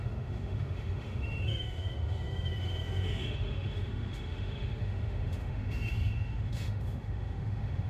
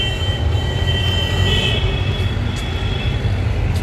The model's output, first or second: first